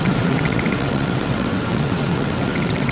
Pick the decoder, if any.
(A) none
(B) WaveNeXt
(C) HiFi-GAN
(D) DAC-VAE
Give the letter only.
B